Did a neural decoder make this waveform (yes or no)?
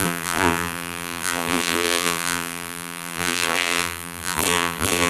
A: yes